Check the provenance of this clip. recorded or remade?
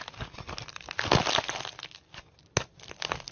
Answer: recorded